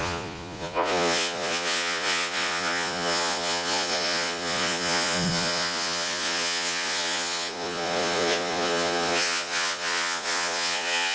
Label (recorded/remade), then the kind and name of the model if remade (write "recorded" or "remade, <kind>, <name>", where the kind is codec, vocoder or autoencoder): remade, vocoder, Vocos